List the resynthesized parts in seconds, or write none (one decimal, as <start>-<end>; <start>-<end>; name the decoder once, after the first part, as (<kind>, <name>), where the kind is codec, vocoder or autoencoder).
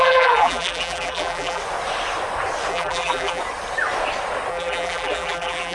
0.0-1.6 (vocoder, BigVGAN v2); 2.7-3.4; 4.5-5.7